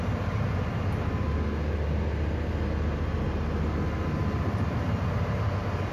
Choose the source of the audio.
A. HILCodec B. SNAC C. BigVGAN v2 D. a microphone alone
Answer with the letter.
D